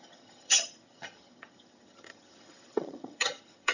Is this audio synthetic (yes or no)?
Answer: yes